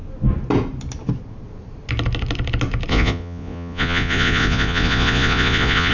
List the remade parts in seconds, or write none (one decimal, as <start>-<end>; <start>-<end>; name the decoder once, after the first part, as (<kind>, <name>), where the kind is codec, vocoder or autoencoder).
2.9-5.9 (vocoder, Vocos)